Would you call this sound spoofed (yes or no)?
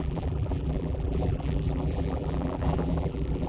yes